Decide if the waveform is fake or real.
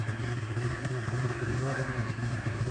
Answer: fake